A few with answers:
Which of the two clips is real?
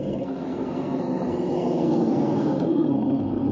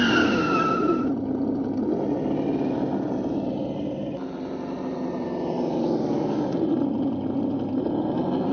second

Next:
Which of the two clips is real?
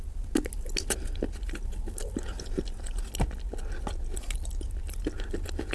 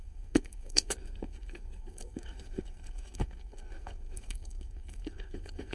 first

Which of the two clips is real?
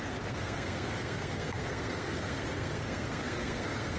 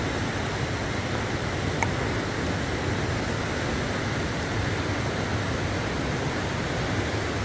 second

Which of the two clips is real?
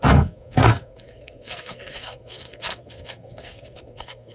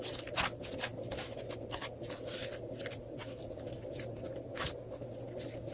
second